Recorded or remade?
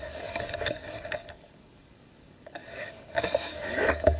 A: remade